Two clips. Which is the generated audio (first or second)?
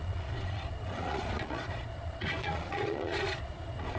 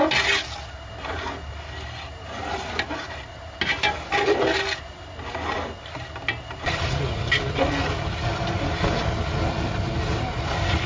first